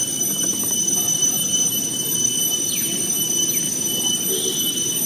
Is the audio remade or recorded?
recorded